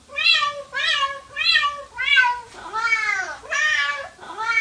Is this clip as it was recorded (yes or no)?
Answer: yes